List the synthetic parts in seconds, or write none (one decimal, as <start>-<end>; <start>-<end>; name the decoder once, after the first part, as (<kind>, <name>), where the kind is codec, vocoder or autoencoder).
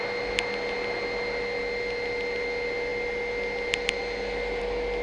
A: none